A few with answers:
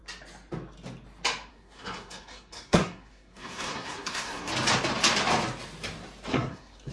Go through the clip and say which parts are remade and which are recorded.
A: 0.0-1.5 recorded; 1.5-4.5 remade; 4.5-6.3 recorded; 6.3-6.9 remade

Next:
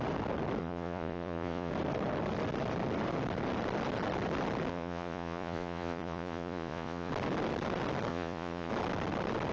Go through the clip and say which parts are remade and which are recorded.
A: 0.0-0.6 recorded; 0.6-1.7 remade; 1.7-4.7 recorded; 4.7-7.1 remade; 7.1-8.1 recorded; 8.1-8.7 remade; 8.7-9.5 recorded